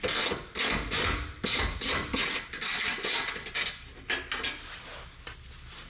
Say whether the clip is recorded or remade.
recorded